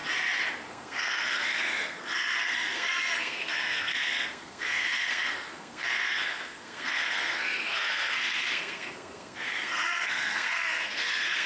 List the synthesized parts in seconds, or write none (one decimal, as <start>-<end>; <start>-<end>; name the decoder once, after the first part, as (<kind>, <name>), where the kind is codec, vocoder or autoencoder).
0.7-11.5 (codec, SNAC)